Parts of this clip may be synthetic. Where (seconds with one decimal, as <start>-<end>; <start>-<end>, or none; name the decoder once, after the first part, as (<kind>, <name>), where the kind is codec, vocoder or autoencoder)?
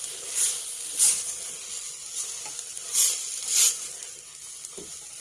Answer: none